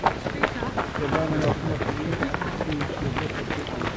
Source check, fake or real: real